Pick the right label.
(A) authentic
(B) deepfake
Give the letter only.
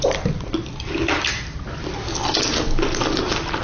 A